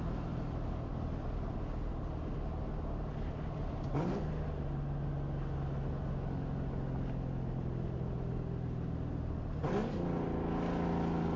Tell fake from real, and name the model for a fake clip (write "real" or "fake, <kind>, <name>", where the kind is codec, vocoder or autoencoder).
real